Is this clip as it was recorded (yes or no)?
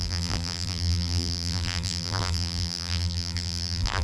no